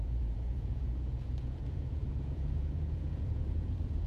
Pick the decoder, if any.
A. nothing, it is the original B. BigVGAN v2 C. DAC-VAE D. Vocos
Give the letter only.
D